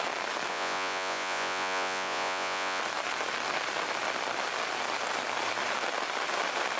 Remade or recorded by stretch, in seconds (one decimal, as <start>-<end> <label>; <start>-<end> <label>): 0.0-0.5 recorded; 0.5-2.8 remade; 2.8-6.8 recorded